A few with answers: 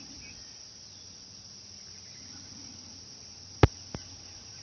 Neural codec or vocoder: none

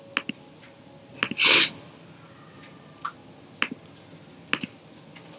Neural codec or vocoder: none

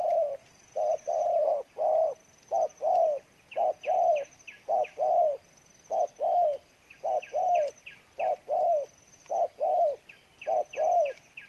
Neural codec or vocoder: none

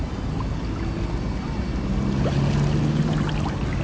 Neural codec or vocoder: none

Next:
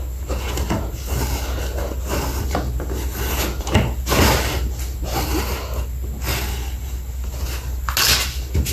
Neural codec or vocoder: none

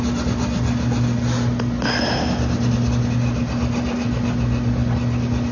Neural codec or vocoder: none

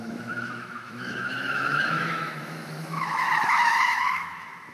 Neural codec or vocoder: autoencoder, DAC-VAE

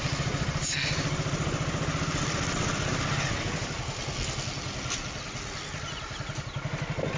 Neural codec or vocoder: none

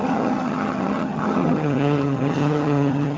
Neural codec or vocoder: vocoder, HiFi-GAN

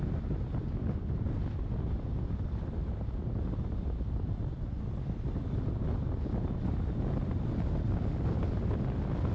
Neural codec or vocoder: none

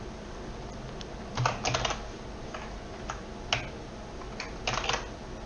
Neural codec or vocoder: none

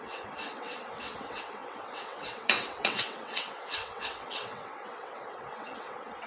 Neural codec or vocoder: vocoder, WaveNeXt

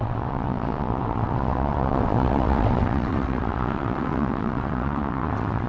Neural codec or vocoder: vocoder, WaveNeXt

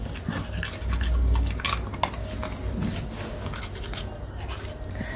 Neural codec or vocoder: none